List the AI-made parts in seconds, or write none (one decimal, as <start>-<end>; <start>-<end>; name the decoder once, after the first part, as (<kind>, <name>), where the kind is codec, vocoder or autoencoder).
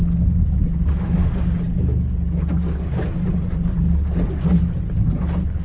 none